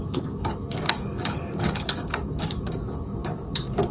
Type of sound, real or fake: fake